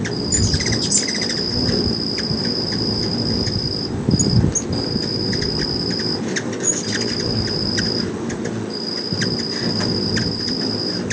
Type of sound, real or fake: real